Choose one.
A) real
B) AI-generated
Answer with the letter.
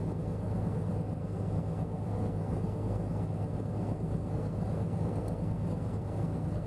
B